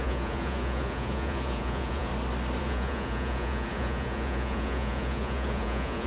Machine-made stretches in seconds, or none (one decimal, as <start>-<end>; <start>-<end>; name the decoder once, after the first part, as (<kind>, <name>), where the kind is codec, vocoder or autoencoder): 0.0-2.1 (vocoder, Vocos); 2.6-6.1